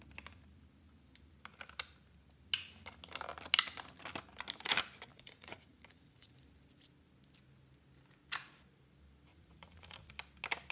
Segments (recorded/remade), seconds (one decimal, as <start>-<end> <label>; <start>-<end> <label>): 0.0-5.1 recorded; 5.1-6.3 remade; 6.3-9.3 recorded; 9.3-10.1 remade; 10.1-10.7 recorded

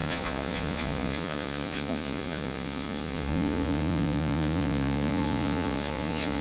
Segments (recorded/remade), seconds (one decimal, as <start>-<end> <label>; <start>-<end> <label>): 0.0-6.4 remade

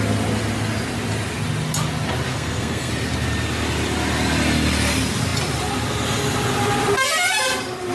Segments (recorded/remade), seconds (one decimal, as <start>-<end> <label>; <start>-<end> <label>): 0.0-2.3 recorded; 2.3-2.9 remade; 2.9-7.9 recorded

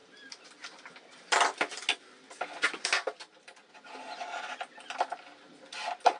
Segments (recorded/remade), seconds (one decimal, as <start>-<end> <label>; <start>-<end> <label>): 0.0-6.2 recorded

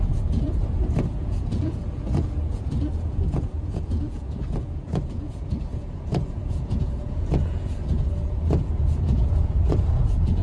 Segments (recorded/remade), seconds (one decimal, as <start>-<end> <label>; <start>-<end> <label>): 0.0-0.6 remade; 0.6-1.1 recorded; 1.1-10.4 remade